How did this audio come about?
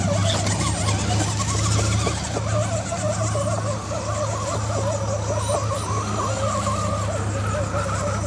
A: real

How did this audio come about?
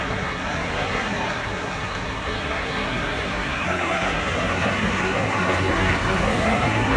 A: fake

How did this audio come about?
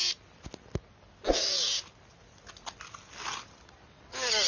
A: real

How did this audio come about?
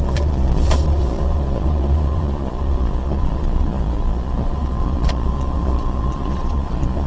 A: fake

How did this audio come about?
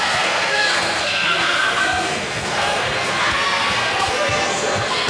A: fake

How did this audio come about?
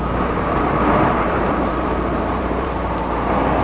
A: fake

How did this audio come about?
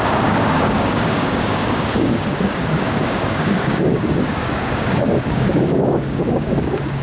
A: fake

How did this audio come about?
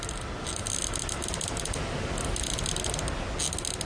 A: real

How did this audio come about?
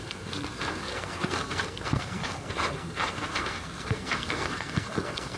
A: fake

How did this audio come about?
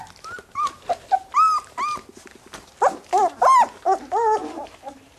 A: real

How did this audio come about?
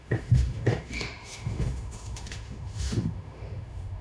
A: fake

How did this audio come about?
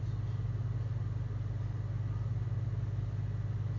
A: real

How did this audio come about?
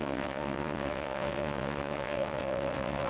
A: fake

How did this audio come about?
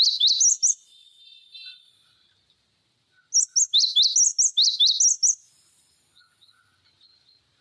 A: real